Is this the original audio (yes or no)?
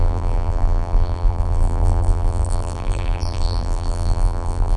no